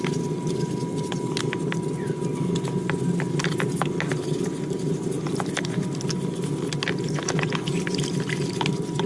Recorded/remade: recorded